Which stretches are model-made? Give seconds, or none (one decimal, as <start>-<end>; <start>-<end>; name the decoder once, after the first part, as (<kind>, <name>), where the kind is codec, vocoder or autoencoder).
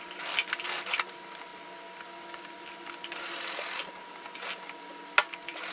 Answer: none